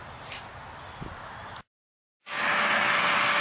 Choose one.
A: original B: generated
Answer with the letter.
A